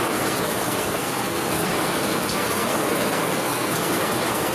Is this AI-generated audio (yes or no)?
yes